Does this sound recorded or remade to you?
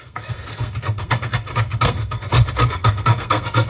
remade